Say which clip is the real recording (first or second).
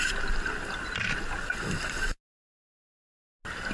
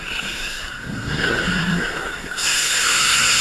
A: first